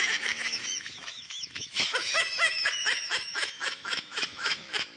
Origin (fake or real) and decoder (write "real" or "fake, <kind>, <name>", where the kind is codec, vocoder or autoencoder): fake, autoencoder, DAC-VAE